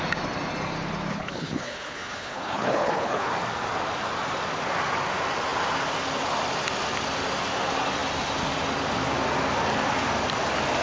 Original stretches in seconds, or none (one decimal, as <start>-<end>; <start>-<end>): 0.0-1.1; 3.3-10.8